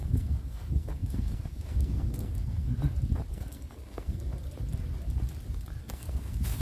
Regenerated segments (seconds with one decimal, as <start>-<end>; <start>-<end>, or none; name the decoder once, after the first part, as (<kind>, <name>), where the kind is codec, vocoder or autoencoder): 0.0-2.7 (codec, SNAC); 3.3-4.3; 5.8-6.6